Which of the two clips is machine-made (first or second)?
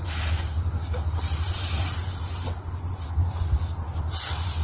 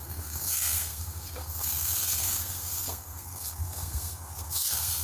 second